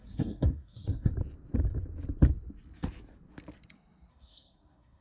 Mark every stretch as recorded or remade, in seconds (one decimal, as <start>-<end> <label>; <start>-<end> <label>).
0.0-1.1 remade; 1.1-4.1 recorded; 4.1-5.0 remade